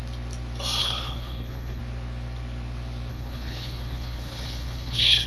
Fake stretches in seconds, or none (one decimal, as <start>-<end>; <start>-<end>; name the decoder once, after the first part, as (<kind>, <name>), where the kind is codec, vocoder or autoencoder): 0.8-1.8 (codec, HILCodec); 3.1-5.3